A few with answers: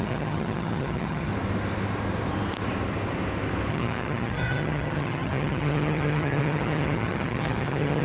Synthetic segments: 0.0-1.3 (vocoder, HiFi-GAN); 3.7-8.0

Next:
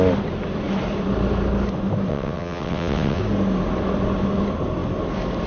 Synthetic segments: 2.1-3.2 (vocoder, WaveNeXt)

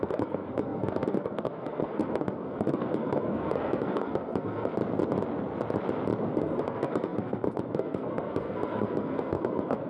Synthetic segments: 0.0-4.8 (codec, SNAC); 6.3-9.9

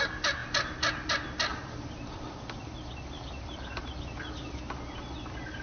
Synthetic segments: 1.5-4.6 (vocoder, BigVGAN v2)

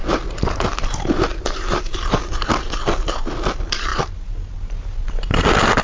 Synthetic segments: 1.3-2.3 (vocoder, BigVGAN v2)

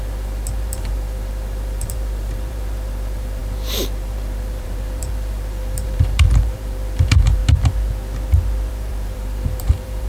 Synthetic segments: 0.0-7.4 (vocoder, BigVGAN v2); 8.7-10.1

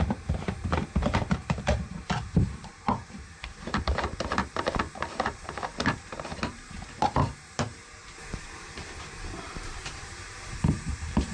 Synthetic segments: 0.0-11.3 (vocoder, BigVGAN v2)

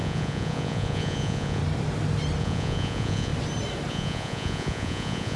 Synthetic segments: 0.0-1.6 (vocoder, Vocos); 2.4-3.3; 3.9-5.4